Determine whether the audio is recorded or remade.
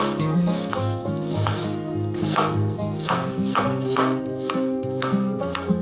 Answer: remade